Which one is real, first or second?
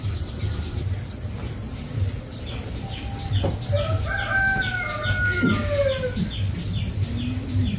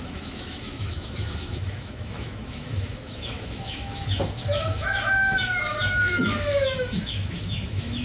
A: first